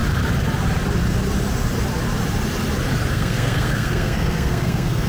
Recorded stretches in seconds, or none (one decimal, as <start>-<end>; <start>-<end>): 0.0-3.1